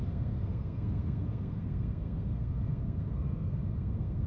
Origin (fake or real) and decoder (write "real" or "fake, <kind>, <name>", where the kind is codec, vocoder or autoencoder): fake, codec, SNAC